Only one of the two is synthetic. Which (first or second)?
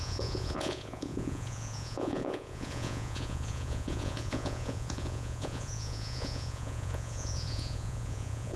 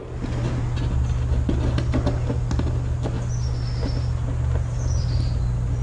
first